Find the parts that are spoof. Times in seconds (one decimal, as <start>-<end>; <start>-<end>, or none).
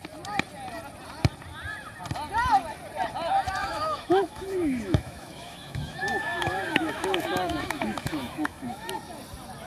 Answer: 3.6-8.9